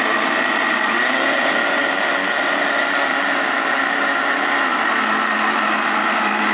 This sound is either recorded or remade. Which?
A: remade